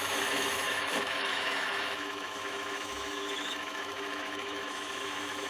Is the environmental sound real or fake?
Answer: fake